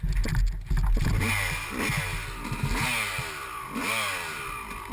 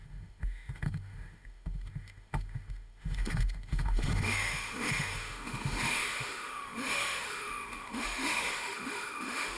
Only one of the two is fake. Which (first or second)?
second